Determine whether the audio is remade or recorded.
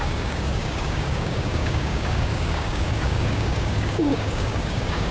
remade